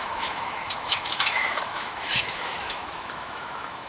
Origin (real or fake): fake